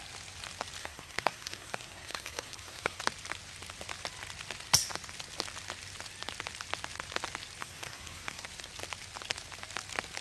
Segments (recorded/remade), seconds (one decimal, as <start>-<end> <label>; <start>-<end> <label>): 0.0-0.8 recorded; 0.8-3.0 remade; 3.0-7.6 recorded; 7.6-8.4 remade; 8.4-10.2 recorded